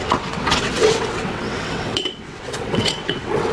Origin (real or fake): fake